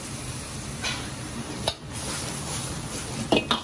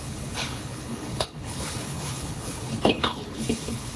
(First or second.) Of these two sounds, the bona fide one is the first